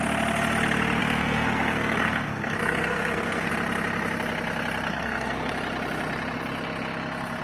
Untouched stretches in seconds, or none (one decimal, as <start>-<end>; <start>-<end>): 0.0-1.0; 3.5-4.9; 5.5-7.4